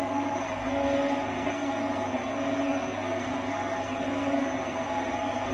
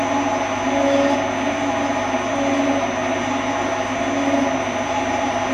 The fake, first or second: first